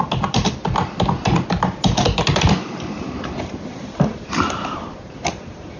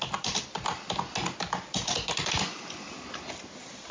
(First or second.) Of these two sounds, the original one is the second